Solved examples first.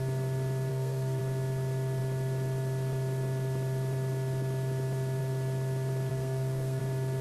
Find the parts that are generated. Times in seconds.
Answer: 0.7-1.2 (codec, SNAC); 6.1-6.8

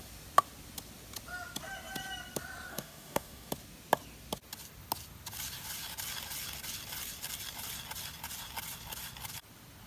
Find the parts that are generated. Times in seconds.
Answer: 2.7-3.5 (codec, DAC)

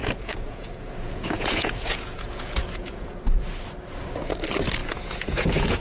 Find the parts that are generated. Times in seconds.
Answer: 0.0-3.2 (vocoder, Vocos); 4.8-5.8

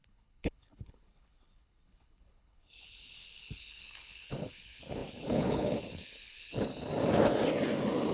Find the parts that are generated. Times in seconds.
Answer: 0.0-6.7 (codec, HILCodec)

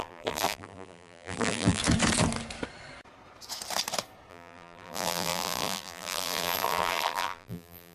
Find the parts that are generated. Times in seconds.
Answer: 0.0-1.8 (vocoder, BigVGAN v2); 4.3-7.9

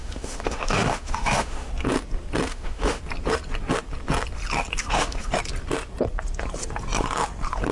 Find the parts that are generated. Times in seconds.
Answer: 0.0-1.7 (autoencoder, DAC-VAE); 2.5-3.0; 4.8-5.3

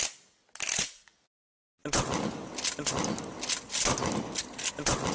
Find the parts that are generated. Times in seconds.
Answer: 0.8-1.4 (vocoder, Vocos)